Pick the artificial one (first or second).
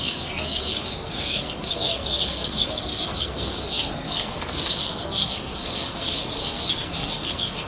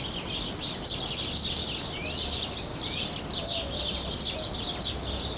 first